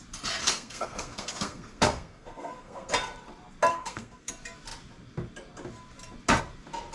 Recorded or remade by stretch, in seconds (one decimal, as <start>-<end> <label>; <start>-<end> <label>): 0.0-0.4 recorded; 0.4-2.9 remade; 2.9-3.7 recorded; 3.7-4.3 remade; 4.3-6.9 recorded